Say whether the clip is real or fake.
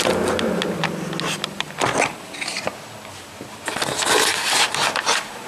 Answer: real